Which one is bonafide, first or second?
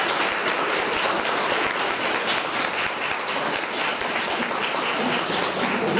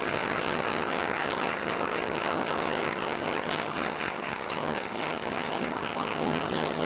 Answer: first